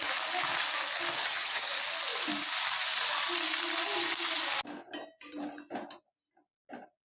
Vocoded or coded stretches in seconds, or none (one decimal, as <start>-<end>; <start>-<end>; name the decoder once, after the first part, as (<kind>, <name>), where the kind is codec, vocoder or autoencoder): 1.2-1.7 (vocoder, HiFi-GAN)